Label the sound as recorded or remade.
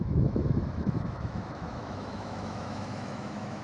remade